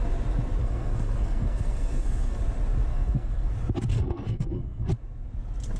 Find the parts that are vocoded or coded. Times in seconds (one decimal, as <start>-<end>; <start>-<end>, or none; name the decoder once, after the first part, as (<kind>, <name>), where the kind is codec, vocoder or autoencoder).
0.6-2.4 (codec, SNAC); 2.9-3.5; 3.9-4.9